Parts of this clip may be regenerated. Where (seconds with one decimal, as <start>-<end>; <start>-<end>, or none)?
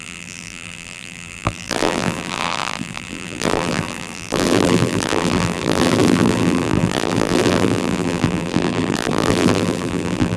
0.0-10.4